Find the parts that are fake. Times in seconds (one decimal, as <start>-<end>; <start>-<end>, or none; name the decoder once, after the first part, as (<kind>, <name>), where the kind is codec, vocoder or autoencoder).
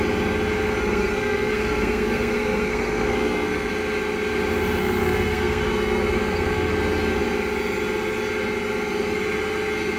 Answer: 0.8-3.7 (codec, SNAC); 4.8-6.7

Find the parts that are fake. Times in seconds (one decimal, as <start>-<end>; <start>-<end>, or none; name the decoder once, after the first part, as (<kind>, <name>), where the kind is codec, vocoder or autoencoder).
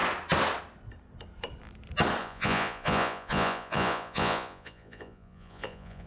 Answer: 2.2-6.1 (vocoder, Vocos)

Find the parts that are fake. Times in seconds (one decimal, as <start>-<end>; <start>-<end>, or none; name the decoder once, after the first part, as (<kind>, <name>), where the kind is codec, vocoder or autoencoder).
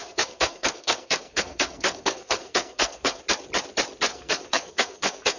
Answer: 0.0-3.2 (codec, SNAC); 4.1-5.4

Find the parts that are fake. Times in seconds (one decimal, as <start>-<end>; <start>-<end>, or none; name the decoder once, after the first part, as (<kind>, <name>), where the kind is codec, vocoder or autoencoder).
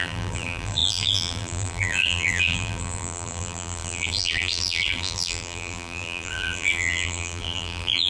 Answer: 0.0-8.1 (vocoder, BigVGAN v2)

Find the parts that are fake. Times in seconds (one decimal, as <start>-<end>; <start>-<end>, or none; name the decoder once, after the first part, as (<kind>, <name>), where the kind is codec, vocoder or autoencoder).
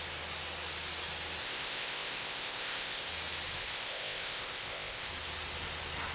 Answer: 1.4-3.1 (codec, ZipCodec); 3.6-5.1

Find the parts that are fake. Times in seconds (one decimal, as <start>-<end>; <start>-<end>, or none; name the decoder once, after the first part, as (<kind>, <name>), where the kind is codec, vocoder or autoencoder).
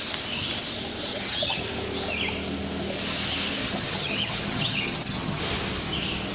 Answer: 1.1-1.6 (vocoder, HiFi-GAN); 3.6-5.4